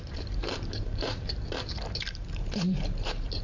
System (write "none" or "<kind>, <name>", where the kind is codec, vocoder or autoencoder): vocoder, BigVGAN v2